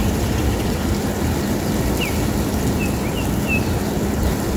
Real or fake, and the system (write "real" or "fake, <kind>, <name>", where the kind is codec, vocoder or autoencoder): real